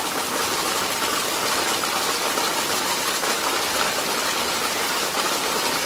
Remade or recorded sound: recorded